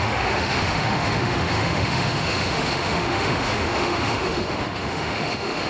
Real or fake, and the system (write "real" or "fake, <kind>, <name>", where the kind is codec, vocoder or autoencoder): fake, autoencoder, DAC-VAE